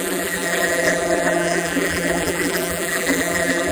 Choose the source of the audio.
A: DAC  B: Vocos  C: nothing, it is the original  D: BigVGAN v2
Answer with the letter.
D